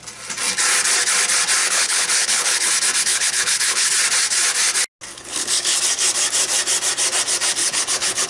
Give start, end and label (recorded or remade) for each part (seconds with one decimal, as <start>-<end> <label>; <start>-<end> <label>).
0.0-1.6 recorded; 1.6-2.7 remade; 2.7-3.1 recorded; 3.1-3.9 remade; 3.9-5.1 recorded; 5.1-5.8 remade; 5.8-7.6 recorded; 7.6-8.3 remade